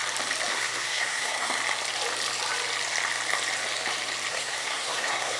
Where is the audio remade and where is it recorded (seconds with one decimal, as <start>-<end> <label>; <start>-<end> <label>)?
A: 0.0-0.5 recorded; 0.5-1.6 remade; 1.6-4.3 recorded; 4.3-5.4 remade

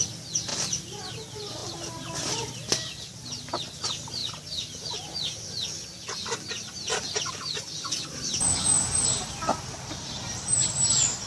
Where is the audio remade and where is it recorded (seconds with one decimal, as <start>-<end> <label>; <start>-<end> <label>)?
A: 0.0-4.2 remade; 4.2-7.3 recorded; 7.3-11.3 remade

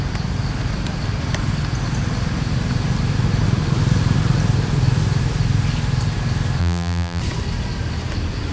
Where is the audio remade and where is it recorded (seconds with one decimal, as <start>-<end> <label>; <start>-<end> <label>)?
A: 0.0-6.6 recorded; 6.6-7.2 remade; 7.2-8.5 recorded